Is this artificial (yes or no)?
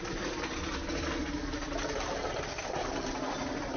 no